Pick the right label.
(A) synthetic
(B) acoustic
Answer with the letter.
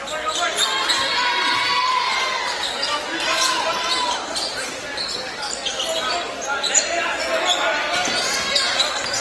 B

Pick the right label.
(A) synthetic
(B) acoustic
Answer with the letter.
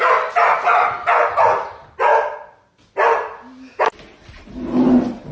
B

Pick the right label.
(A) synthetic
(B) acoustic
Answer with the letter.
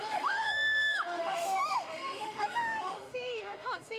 A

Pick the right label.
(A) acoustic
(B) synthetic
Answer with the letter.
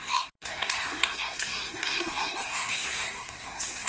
B